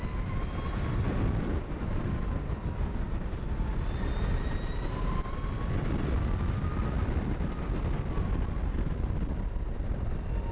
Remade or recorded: recorded